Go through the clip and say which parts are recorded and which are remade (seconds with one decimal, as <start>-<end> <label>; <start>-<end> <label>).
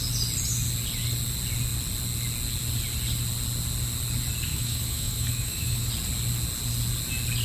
0.0-4.5 recorded; 4.5-5.9 remade; 5.9-7.4 recorded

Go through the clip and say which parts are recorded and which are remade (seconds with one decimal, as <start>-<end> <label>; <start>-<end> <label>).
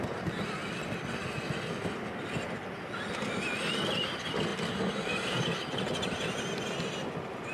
0.0-7.5 recorded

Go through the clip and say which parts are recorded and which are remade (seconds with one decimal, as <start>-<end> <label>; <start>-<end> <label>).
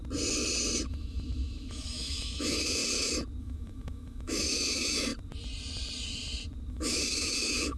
0.0-0.9 recorded; 0.9-2.8 remade; 2.8-3.4 recorded; 3.4-5.1 remade; 5.1-6.7 recorded; 6.7-7.8 remade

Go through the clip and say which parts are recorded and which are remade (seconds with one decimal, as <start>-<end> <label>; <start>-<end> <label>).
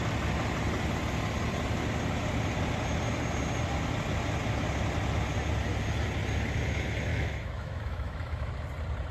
0.0-7.1 recorded; 7.1-8.5 remade; 8.5-9.1 recorded